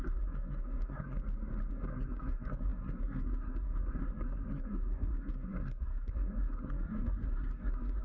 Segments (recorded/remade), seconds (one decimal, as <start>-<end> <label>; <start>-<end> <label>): 0.0-1.2 remade; 1.2-1.7 recorded; 1.7-8.0 remade